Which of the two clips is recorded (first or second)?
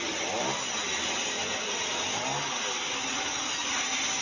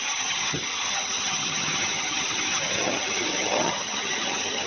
first